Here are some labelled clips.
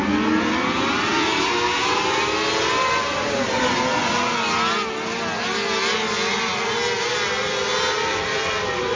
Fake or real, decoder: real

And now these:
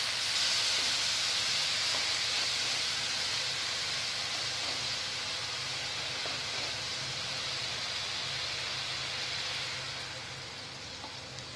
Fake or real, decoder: real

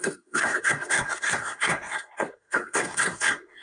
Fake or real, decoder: fake, codec, SNAC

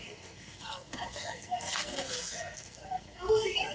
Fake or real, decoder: fake, codec, SNAC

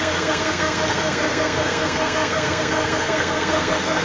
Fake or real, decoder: fake, codec, SNAC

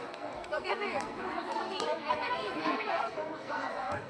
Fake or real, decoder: fake, codec, SNAC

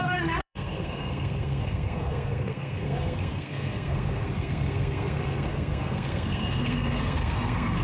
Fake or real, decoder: fake, codec, SNAC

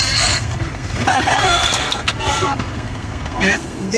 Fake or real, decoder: fake, codec, SNAC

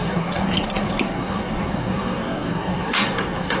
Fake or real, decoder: fake, codec, SNAC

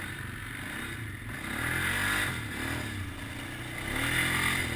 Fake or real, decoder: real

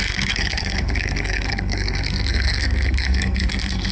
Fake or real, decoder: fake, codec, SNAC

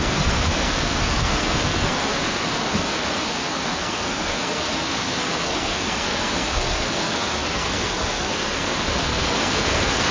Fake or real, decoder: fake, codec, SNAC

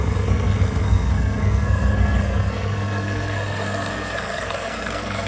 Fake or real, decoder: fake, codec, SNAC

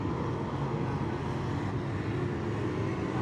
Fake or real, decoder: real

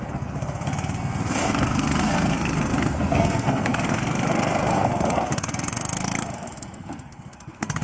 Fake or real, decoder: fake, codec, SNAC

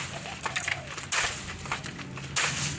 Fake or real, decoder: real